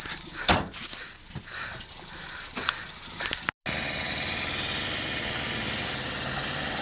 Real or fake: real